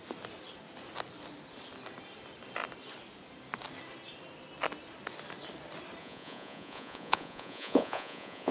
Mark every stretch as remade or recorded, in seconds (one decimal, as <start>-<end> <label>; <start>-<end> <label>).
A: 0.0-6.0 recorded; 6.0-8.5 remade